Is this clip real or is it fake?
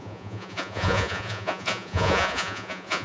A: fake